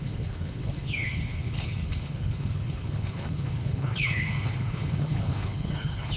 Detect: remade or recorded remade